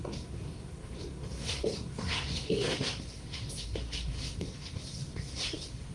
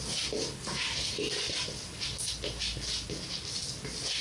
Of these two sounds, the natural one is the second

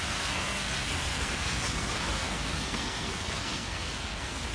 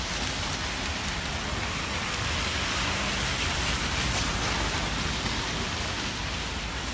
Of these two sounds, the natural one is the second